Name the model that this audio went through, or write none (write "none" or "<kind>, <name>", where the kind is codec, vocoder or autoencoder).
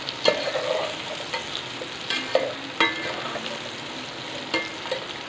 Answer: none